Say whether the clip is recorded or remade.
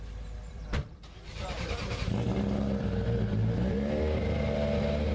remade